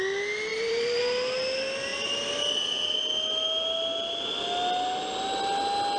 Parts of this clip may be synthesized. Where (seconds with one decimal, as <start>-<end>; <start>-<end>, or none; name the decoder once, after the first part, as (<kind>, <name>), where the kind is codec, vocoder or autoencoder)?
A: 0.5-1.0 (vocoder, BigVGAN v2)